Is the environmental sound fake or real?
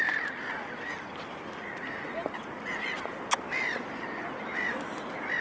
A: real